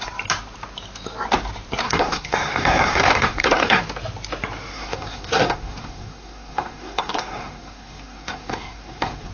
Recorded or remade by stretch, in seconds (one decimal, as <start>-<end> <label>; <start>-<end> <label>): 0.0-1.8 recorded; 1.8-3.8 remade; 3.8-4.7 recorded; 4.7-9.3 remade